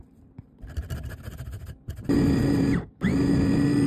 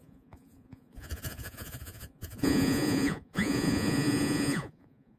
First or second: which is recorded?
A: first